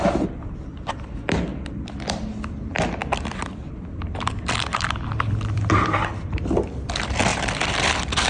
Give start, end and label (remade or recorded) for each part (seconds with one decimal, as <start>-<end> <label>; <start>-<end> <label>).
0.0-1.5 remade; 1.5-2.1 recorded; 2.1-8.3 remade